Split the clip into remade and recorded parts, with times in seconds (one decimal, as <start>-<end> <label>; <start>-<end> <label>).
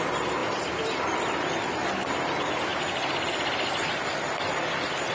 0.0-5.1 recorded